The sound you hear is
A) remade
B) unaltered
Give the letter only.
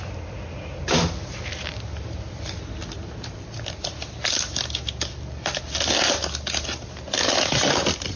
B